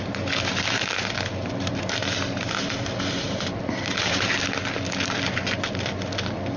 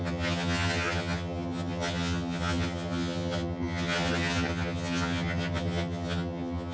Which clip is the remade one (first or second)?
second